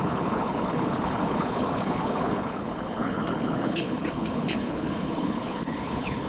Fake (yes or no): yes